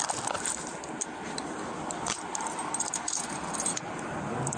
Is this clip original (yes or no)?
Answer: yes